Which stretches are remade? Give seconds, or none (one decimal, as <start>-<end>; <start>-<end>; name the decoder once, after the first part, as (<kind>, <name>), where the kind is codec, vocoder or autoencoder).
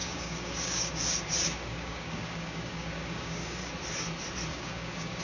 0.0-0.9 (codec, DAC); 1.6-3.7; 4.5-5.2